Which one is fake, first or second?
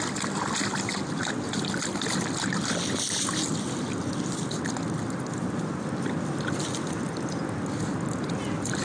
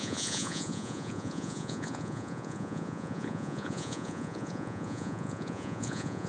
second